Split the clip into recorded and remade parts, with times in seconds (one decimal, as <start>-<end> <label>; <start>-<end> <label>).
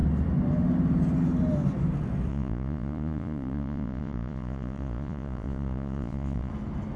0.0-2.3 recorded; 2.3-6.5 remade; 6.5-7.0 recorded